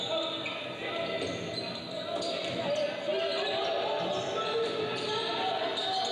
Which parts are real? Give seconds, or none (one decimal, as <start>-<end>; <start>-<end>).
0.0-6.1